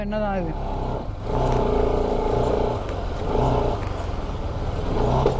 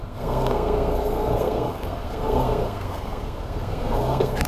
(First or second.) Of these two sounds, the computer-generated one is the second